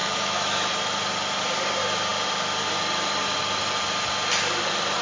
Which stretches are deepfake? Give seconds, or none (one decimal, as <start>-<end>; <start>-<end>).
0.0-0.7